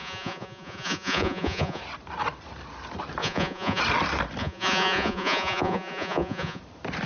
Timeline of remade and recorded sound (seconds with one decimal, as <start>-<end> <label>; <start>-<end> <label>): 0.0-1.8 remade; 1.8-3.2 recorded; 3.2-3.8 remade; 3.8-4.4 recorded; 4.4-6.6 remade; 6.6-7.1 recorded